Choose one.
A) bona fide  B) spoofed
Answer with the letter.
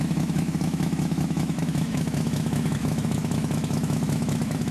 B